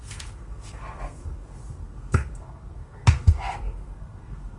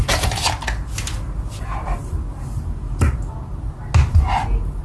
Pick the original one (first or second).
second